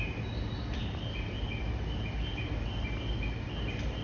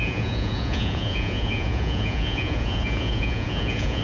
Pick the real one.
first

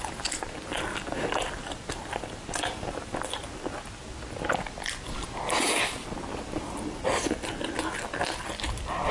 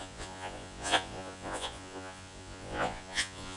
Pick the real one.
first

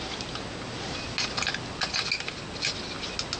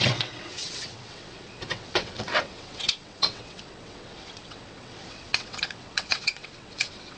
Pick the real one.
first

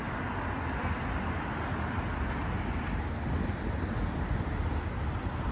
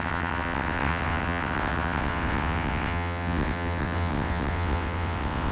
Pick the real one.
first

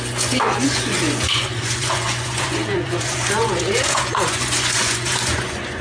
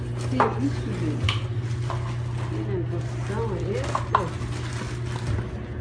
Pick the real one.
second